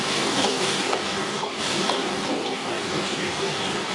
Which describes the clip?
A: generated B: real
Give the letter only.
A